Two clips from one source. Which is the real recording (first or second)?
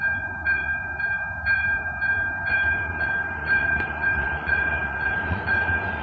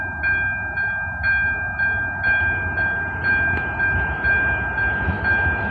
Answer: second